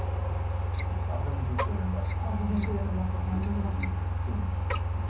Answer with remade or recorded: recorded